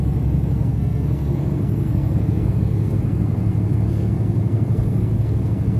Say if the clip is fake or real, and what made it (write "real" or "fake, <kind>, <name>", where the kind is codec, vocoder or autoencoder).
fake, codec, SNAC